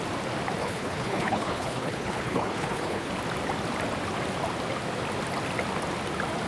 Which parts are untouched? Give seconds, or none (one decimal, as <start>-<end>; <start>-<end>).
0.0-0.6; 3.1-6.5